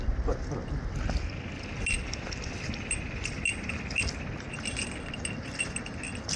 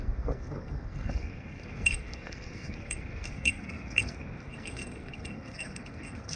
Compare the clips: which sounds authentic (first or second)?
first